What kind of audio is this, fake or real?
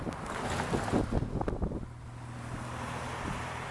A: real